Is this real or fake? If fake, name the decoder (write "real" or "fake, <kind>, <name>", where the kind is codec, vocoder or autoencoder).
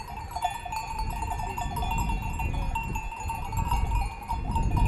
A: real